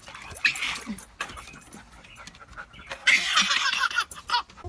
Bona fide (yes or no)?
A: yes